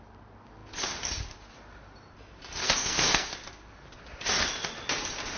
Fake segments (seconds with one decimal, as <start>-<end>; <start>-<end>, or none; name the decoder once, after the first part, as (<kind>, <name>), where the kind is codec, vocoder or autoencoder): 2.6-3.3 (codec, SNAC)